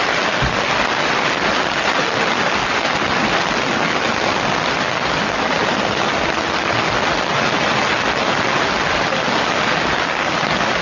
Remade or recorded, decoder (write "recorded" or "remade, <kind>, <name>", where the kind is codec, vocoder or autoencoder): recorded